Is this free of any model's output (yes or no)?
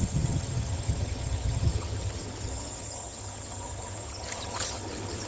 no